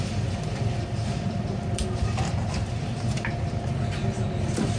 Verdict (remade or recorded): recorded